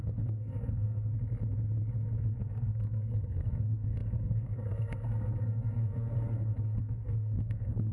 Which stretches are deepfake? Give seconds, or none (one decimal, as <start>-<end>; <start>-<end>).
0.0-1.1; 2.2-7.9